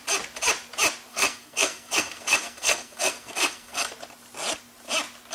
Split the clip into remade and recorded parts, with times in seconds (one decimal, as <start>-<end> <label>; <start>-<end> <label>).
0.0-1.1 recorded; 1.1-3.9 remade; 3.9-5.3 recorded